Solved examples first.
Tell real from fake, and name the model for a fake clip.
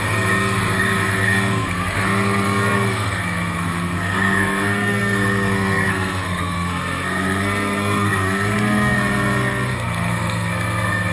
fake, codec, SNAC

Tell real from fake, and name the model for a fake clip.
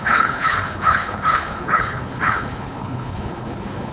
fake, codec, HILCodec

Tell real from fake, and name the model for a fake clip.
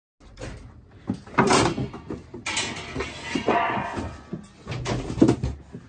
real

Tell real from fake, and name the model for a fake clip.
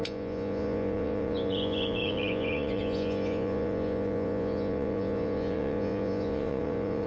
fake, vocoder, Vocos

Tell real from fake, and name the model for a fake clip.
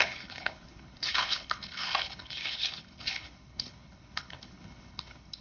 fake, codec, HILCodec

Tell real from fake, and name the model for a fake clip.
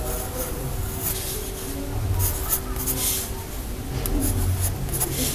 real